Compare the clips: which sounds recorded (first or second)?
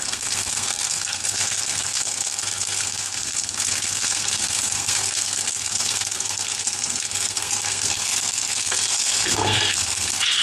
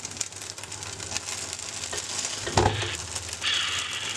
second